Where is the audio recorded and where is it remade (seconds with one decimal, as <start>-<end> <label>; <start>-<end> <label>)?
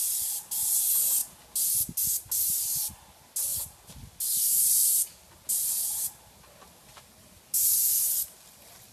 0.0-8.9 recorded